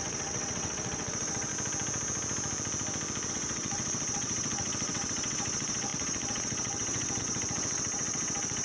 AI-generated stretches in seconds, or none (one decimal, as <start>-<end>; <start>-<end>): 0.0-1.5; 3.3-8.6